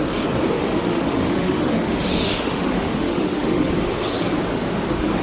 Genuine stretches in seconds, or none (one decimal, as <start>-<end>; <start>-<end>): 0.0-0.6; 3.7-5.2